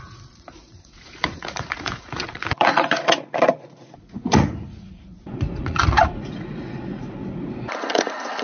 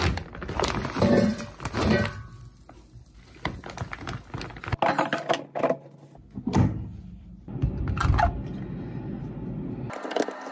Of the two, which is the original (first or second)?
second